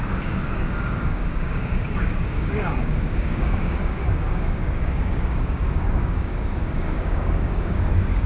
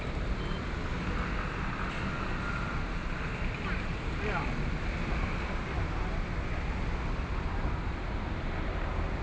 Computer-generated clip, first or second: first